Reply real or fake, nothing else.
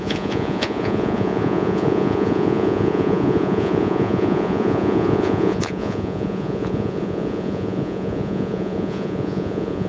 fake